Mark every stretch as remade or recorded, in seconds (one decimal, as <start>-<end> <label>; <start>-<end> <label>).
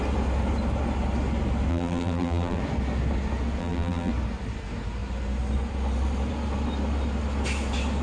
0.0-1.7 recorded; 1.7-2.6 remade; 2.6-3.6 recorded; 3.6-4.1 remade; 4.1-8.0 recorded